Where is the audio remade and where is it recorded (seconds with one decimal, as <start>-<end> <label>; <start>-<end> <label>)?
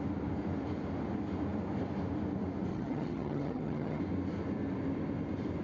0.0-2.7 recorded; 2.7-4.0 remade; 4.0-5.6 recorded